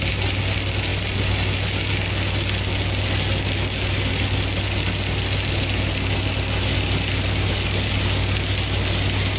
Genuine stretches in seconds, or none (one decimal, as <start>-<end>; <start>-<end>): 0.0-9.4